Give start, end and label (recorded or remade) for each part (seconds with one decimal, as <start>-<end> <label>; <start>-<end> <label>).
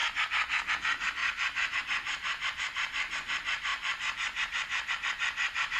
0.0-0.7 recorded; 0.7-1.2 remade; 1.2-1.8 recorded; 1.8-5.8 remade